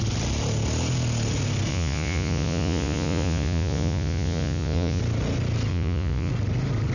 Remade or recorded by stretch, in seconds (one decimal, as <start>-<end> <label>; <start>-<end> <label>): 0.0-1.7 recorded; 1.7-5.0 remade; 5.0-5.7 recorded; 5.7-6.3 remade; 6.3-6.9 recorded